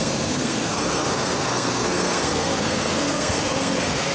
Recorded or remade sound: remade